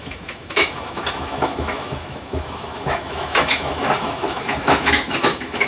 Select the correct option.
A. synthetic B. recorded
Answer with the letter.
A